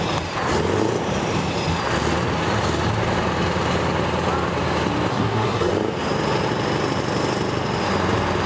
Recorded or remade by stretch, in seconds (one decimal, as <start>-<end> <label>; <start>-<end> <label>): 0.0-5.1 recorded; 5.1-5.7 remade; 5.7-8.5 recorded